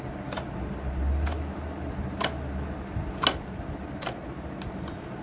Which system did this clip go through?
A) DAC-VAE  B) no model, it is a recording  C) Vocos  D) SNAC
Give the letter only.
B